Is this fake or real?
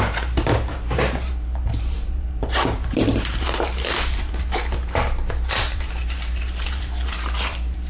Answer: fake